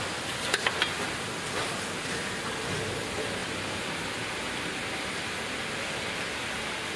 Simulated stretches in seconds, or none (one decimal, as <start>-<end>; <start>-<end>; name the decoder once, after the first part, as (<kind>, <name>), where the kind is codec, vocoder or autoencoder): none